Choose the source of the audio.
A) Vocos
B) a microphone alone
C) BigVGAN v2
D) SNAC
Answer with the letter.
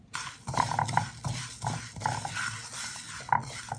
B